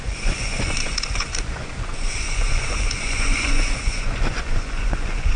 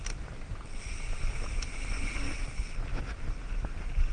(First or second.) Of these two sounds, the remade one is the first